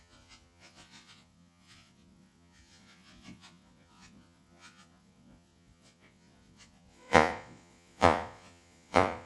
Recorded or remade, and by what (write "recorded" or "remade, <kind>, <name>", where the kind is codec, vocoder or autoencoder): remade, vocoder, Vocos